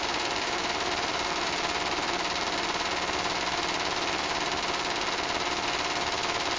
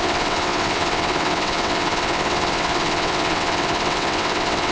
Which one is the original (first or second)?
first